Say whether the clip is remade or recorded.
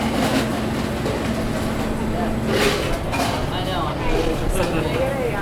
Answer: recorded